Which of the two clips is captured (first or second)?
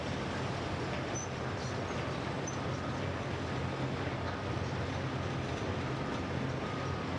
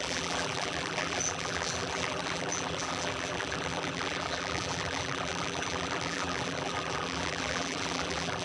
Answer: first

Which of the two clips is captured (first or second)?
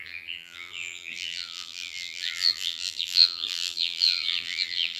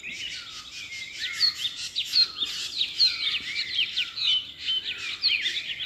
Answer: second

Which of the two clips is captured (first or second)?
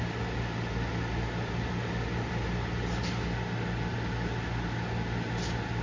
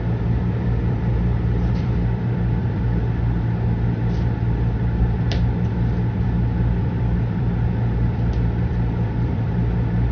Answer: first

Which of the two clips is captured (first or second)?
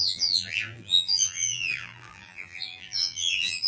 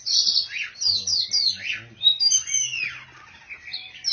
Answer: second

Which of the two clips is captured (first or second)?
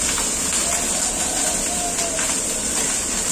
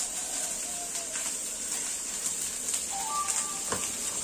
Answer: second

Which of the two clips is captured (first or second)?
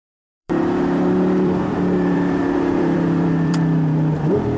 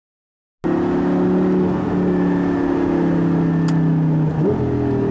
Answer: second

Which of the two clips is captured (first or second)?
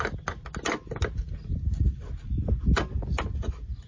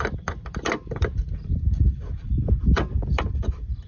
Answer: first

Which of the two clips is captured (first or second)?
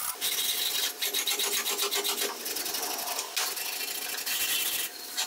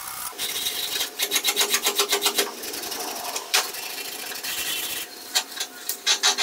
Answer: first